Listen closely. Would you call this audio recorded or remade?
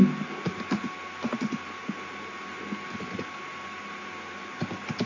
recorded